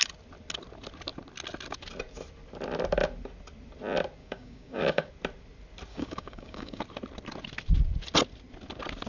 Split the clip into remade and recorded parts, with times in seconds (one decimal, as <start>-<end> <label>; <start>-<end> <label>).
0.0-4.2 recorded; 4.2-5.1 remade; 5.1-5.9 recorded; 5.9-6.8 remade; 6.8-9.1 recorded